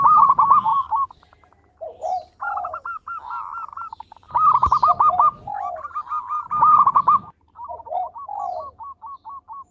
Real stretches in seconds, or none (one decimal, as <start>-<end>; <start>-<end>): 0.0-9.7